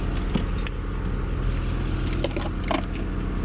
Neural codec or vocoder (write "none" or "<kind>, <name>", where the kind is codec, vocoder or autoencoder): none